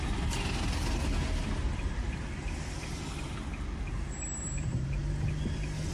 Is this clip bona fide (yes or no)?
yes